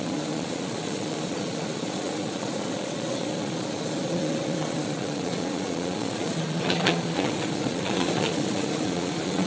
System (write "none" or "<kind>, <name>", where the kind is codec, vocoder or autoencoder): vocoder, Vocos